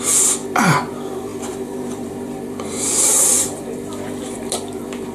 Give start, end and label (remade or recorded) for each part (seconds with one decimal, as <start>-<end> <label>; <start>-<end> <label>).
0.0-0.4 remade; 0.4-0.9 recorded; 0.9-5.1 remade